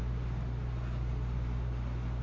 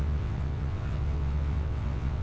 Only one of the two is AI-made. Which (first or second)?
second